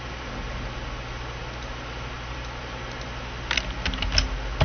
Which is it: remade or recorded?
recorded